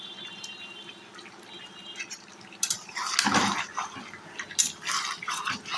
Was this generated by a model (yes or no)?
no